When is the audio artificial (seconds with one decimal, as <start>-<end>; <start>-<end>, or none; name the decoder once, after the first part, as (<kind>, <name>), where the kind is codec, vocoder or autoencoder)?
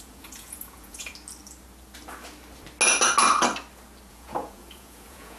0.0-1.1 (vocoder, Vocos); 4.1-5.4